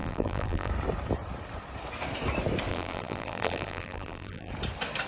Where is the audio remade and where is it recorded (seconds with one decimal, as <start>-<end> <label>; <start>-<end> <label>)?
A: 0.0-0.7 remade; 0.7-2.7 recorded; 2.7-4.5 remade; 4.5-5.1 recorded